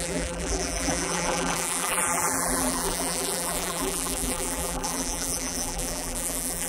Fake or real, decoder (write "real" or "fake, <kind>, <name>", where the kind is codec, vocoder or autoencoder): fake, vocoder, BigVGAN v2